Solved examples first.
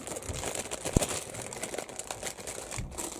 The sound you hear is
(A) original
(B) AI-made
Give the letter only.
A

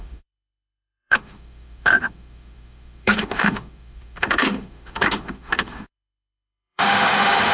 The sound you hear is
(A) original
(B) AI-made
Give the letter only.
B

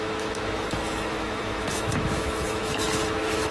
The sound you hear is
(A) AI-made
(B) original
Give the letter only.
A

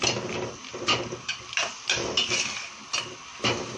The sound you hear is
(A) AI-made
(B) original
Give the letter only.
B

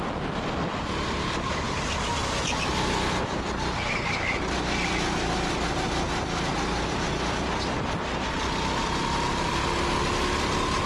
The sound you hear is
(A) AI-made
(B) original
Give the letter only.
B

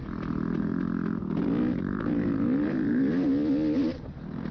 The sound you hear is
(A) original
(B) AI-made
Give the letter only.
A